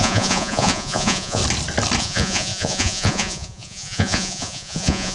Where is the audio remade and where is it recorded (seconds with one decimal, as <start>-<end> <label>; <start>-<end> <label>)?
0.0-1.4 remade; 1.4-2.0 recorded; 2.0-5.1 remade